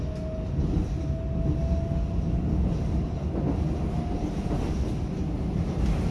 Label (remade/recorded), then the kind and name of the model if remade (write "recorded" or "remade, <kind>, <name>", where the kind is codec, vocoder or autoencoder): recorded